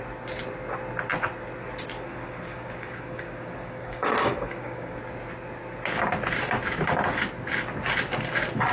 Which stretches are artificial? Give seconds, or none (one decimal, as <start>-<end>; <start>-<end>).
2.1-5.0